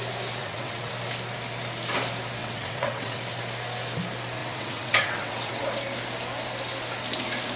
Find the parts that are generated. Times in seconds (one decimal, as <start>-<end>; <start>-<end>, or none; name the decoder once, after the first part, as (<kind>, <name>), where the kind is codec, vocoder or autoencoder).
0.4-0.9 (vocoder, WaveNeXt); 2.4-3.2; 4.4-5.6